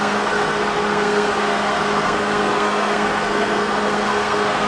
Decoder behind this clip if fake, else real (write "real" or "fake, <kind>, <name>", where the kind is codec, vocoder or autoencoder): fake, codec, SNAC